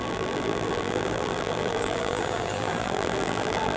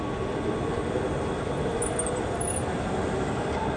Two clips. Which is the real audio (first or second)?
second